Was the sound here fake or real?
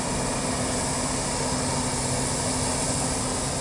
real